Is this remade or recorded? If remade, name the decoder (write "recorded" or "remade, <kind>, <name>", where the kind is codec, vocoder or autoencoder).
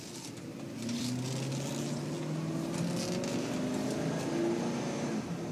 recorded